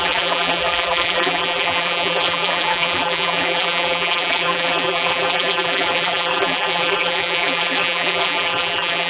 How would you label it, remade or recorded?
remade